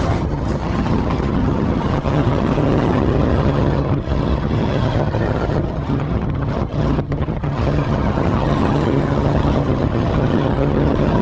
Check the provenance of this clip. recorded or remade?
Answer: remade